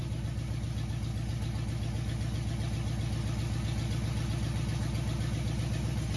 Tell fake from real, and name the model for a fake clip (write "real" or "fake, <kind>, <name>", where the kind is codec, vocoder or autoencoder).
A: real